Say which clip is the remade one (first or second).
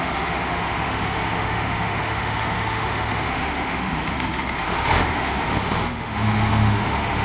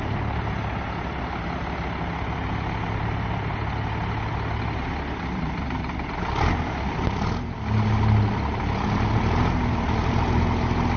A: first